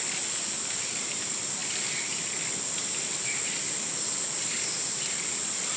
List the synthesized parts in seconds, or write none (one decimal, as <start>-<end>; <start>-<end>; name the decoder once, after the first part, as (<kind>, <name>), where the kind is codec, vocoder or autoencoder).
none